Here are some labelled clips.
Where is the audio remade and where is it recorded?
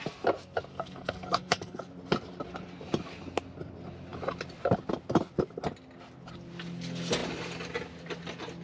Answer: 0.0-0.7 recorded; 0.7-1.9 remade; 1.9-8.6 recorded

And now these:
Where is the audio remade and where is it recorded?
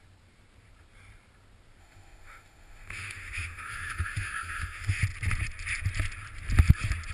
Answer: 0.0-1.8 recorded; 1.8-5.0 remade; 5.0-7.1 recorded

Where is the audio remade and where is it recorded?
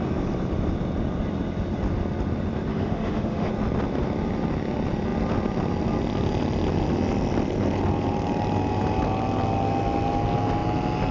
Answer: 0.0-2.7 recorded; 2.7-3.5 remade; 3.5-11.1 recorded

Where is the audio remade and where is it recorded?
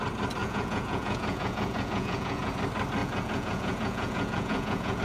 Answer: 0.0-0.4 recorded; 0.4-2.5 remade; 2.5-3.0 recorded; 3.0-5.0 remade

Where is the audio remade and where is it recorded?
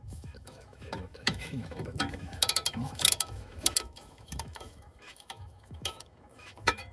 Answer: 0.0-6.9 remade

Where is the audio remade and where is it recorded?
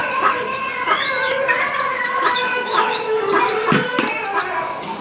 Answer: 0.0-0.6 remade; 0.6-1.9 recorded; 1.9-3.2 remade; 3.2-5.0 recorded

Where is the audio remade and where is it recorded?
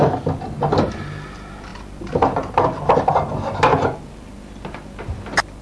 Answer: 0.0-5.6 recorded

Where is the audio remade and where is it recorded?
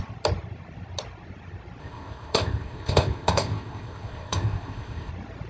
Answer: 0.0-1.8 recorded; 1.8-5.1 remade; 5.1-5.5 recorded